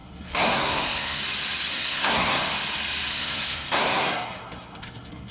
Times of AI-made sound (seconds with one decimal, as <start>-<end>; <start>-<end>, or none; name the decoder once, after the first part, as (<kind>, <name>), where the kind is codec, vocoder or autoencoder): 0.0-1.2 (codec, SNAC); 1.7-2.4; 3.1-5.3